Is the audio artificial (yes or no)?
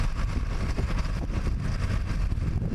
no